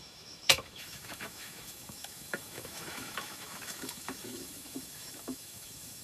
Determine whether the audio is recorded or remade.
remade